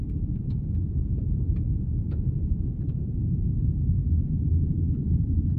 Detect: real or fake fake